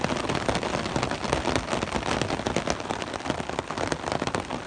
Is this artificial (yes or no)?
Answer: no